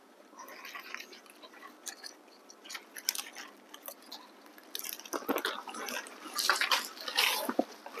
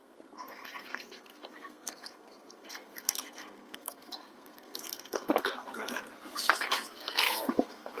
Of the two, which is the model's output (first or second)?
second